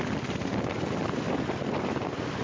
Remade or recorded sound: recorded